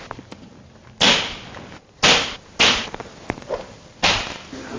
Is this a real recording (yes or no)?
yes